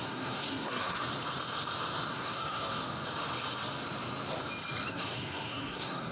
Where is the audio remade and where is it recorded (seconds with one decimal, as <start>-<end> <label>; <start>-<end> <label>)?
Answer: 0.0-1.0 remade; 1.0-2.1 recorded; 2.1-2.8 remade; 2.8-4.9 recorded; 4.9-6.1 remade